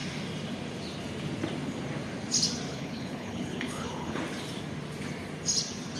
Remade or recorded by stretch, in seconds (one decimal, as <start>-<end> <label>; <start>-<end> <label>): 0.0-2.7 recorded; 2.7-4.2 remade; 4.2-6.0 recorded